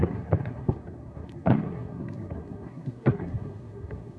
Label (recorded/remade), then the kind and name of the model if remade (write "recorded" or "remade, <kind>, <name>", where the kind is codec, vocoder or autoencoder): remade, codec, SNAC